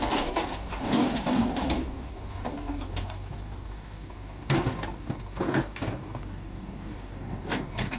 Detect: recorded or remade remade